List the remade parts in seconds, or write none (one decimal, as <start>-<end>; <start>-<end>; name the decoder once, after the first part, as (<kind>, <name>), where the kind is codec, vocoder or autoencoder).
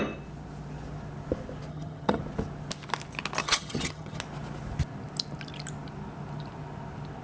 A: 1.7-2.2 (vocoder, HiFi-GAN); 3.4-4.2